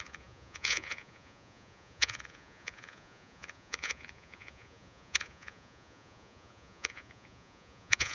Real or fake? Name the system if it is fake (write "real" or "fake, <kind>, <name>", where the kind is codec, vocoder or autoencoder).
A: fake, vocoder, Vocos